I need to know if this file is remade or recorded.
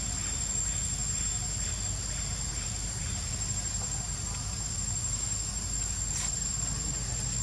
recorded